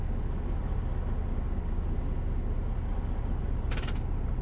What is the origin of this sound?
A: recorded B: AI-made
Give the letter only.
A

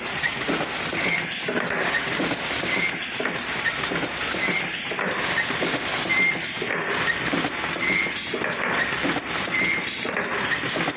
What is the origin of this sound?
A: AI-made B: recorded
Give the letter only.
B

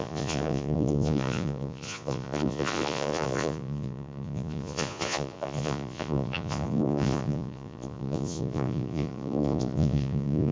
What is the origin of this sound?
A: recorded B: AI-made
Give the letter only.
B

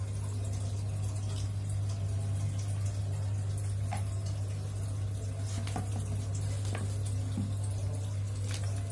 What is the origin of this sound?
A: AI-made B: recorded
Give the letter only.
B